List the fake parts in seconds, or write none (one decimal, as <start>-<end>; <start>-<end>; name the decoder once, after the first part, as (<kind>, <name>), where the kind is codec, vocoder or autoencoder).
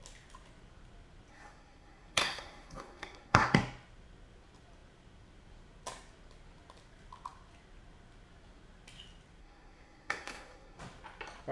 1.3-3.6 (codec, SNAC); 9.4-10.8